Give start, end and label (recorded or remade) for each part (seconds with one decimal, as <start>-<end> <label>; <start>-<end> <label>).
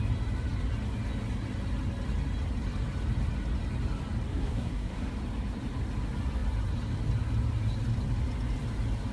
0.0-4.3 recorded; 4.3-5.1 remade; 5.1-9.1 recorded